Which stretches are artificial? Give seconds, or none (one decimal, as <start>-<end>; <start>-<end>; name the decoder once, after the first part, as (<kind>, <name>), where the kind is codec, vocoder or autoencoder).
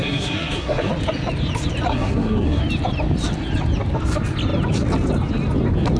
0.0-0.9 (codec, SNAC); 1.9-2.6